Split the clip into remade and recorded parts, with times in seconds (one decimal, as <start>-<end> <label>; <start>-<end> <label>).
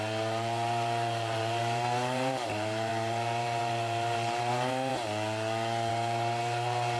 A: 0.0-4.9 remade; 4.9-5.9 recorded; 5.9-7.0 remade